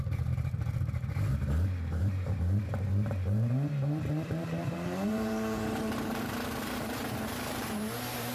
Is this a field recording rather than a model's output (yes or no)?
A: no